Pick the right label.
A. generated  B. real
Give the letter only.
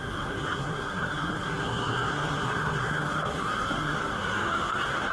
A